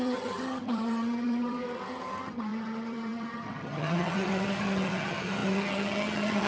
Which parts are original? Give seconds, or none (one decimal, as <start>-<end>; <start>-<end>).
none